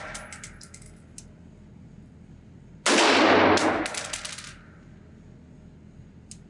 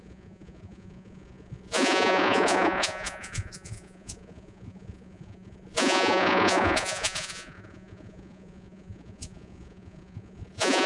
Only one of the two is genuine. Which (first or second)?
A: first